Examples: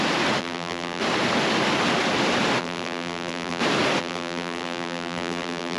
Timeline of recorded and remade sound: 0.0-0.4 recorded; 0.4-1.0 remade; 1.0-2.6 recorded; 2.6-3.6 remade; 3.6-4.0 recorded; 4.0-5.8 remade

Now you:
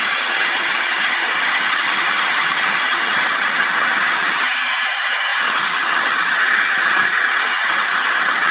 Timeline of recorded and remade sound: 0.0-8.5 remade

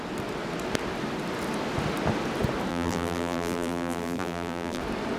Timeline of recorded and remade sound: 0.0-2.7 recorded; 2.7-4.8 remade; 4.8-5.2 recorded

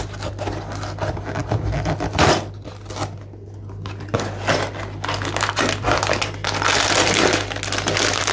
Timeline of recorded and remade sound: 0.0-8.3 recorded

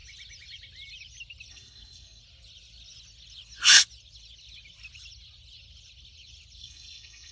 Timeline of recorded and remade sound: 0.0-1.5 recorded; 1.5-2.2 remade; 2.2-6.6 recorded; 6.6-7.3 remade

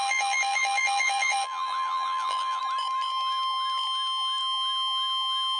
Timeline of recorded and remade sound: 0.0-2.6 remade; 2.6-5.6 recorded

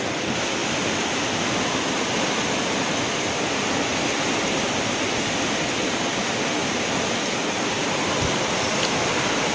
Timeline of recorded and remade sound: 0.0-9.5 recorded